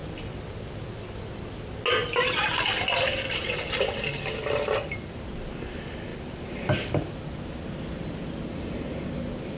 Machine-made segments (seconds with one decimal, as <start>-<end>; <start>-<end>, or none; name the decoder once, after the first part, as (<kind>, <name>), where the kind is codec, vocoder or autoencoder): 2.0-2.6 (vocoder, BigVGAN v2); 6.1-7.1